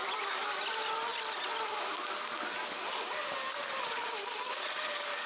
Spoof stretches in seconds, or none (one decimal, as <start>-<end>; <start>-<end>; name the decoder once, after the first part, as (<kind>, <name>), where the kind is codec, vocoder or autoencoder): none